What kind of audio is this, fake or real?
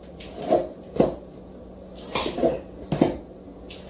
real